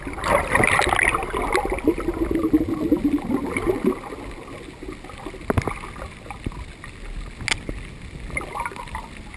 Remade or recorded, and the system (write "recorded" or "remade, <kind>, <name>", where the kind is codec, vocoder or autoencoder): recorded